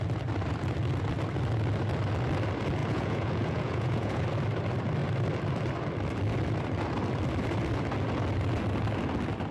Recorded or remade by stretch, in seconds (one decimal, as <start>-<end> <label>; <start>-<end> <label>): 0.0-2.8 recorded; 2.8-4.2 remade; 4.2-9.5 recorded